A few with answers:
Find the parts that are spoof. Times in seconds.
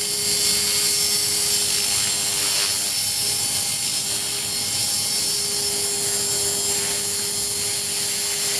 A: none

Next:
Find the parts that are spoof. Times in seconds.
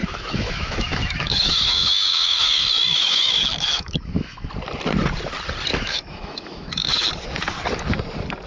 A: 0.0-4.5 (autoencoder, DAC-VAE); 5.7-7.1